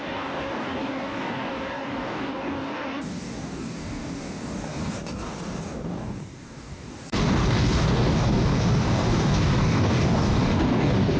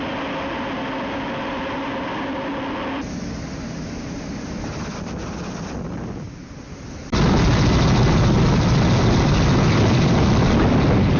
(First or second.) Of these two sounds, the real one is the second